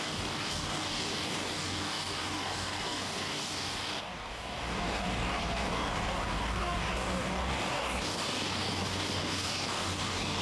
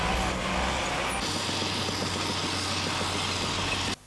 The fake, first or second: first